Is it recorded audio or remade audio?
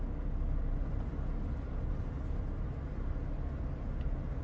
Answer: recorded